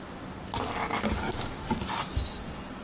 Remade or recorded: recorded